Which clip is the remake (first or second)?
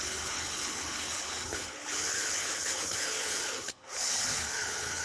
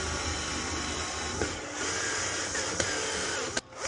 first